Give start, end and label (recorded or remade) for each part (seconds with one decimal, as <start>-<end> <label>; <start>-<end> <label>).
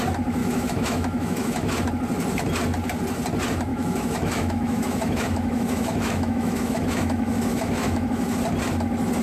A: 0.0-0.4 recorded; 0.4-1.8 remade; 1.8-3.7 recorded; 3.7-8.4 remade; 8.4-9.2 recorded